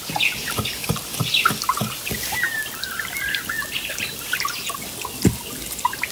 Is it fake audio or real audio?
real